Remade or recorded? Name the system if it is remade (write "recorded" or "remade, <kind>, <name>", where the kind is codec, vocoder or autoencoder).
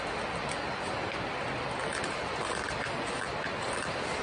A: recorded